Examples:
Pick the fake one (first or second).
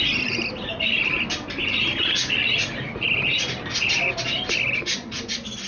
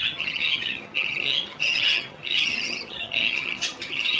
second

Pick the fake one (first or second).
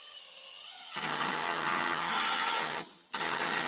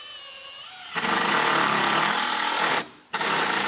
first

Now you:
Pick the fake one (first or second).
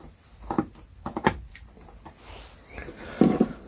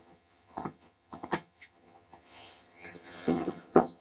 second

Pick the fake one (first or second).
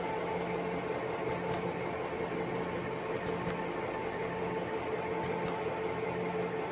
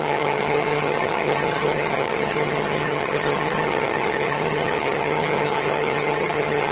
second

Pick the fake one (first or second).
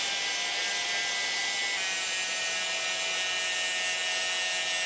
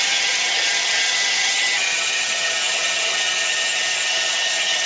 second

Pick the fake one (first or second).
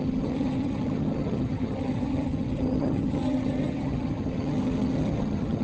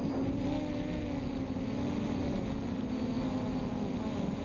first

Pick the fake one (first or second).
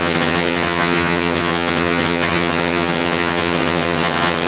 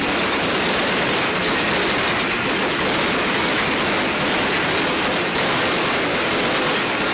first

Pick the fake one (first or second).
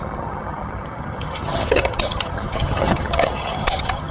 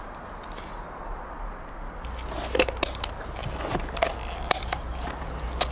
first